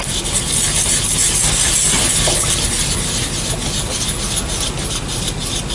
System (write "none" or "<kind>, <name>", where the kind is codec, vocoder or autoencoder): none